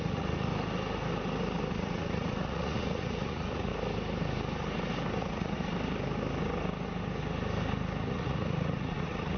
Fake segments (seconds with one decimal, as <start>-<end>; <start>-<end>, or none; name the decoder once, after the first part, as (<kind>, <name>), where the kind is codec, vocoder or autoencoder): 0.0-0.5 (vocoder, Vocos); 1.7-3.7; 5.2-5.7; 8.0-9.4

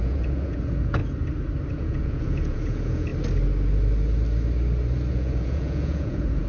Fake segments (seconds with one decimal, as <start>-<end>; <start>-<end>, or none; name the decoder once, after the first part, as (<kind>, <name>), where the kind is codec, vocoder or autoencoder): 0.0-1.0 (vocoder, Vocos); 1.7-3.1; 5.1-6.5

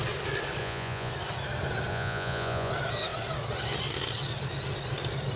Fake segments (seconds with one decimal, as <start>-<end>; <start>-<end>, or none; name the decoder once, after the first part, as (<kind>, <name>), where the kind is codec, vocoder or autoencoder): 0.6-1.1 (vocoder, Vocos); 1.9-2.7

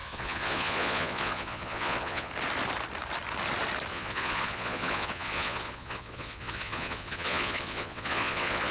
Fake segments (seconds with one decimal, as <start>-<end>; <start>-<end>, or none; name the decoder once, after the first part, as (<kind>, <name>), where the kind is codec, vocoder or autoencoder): 0.0-2.3 (vocoder, Vocos); 3.9-8.7